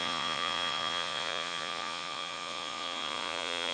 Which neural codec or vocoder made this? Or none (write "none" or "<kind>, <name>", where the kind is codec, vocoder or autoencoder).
vocoder, Vocos